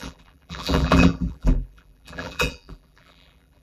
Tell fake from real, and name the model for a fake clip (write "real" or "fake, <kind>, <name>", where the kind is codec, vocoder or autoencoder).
fake, vocoder, BigVGAN v2